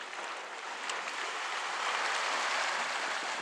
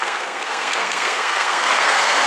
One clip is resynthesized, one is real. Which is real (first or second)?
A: first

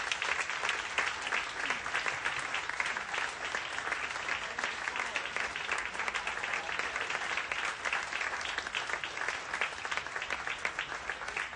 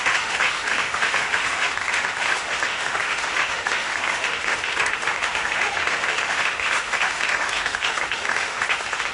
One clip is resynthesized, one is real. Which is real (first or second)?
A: first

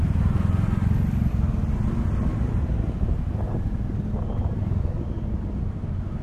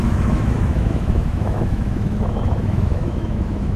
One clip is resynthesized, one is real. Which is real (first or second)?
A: first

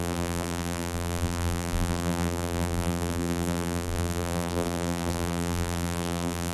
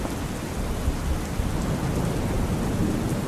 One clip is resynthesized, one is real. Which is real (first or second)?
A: second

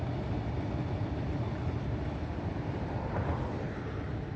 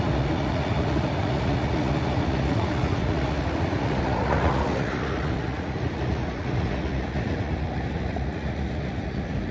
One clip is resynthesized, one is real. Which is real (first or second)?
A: first